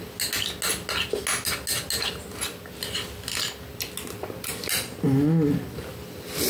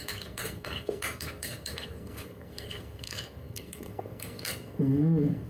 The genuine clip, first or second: first